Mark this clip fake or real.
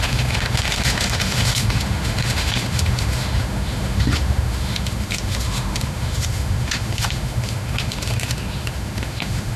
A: fake